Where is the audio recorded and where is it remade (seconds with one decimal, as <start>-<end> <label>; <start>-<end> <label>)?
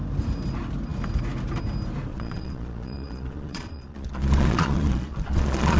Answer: 0.0-2.1 recorded; 2.1-5.8 remade